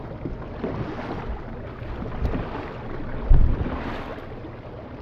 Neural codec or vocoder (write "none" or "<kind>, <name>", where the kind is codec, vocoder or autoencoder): none